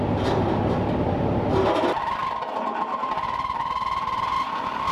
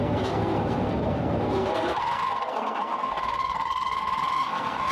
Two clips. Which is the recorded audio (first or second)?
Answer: first